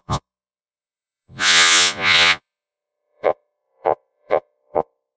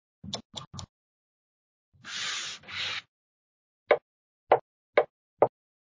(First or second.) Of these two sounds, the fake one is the first